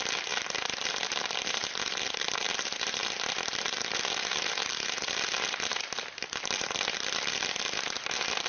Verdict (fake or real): fake